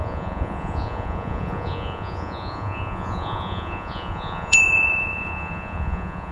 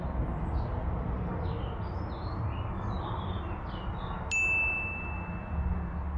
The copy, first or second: first